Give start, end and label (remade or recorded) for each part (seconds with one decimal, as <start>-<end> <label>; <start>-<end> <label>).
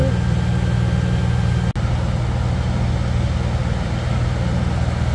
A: 0.0-5.1 recorded